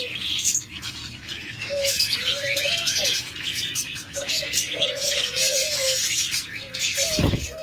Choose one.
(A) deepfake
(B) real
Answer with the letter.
A